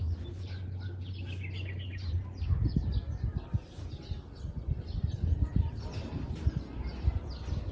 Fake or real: real